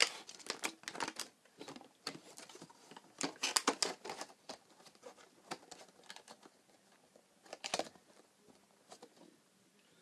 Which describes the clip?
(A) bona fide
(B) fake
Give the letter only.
A